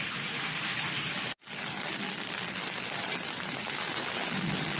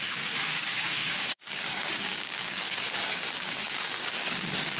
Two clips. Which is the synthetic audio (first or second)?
second